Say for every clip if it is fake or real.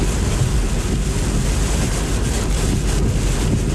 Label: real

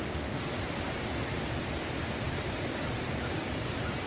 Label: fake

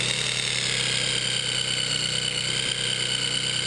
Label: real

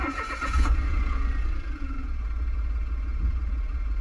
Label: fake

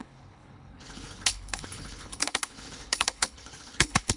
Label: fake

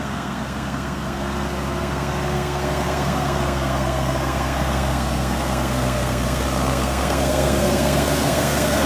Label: fake